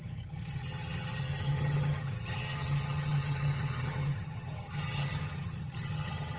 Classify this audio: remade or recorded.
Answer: remade